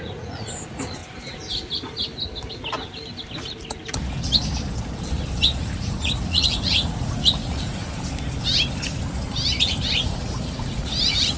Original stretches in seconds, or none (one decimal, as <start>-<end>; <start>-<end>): 1.0-5.6; 7.8-9.6